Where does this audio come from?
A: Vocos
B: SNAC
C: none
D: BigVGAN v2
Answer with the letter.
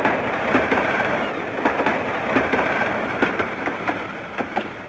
D